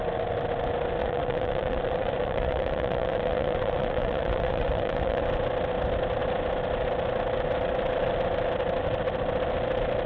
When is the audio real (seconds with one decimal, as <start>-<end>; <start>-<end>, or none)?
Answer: 0.0-1.0; 5.2-10.1